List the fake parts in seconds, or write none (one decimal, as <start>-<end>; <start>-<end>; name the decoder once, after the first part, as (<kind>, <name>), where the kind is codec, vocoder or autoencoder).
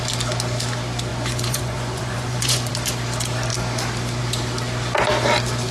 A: 1.1-2.7 (vocoder, Vocos)